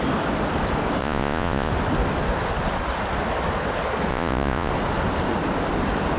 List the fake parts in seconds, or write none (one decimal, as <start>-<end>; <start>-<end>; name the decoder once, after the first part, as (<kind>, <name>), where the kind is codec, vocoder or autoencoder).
1.0-1.7 (vocoder, Vocos); 4.1-4.7